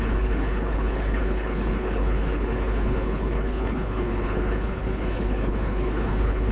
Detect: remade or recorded remade